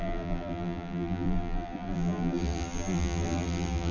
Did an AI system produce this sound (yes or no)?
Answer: yes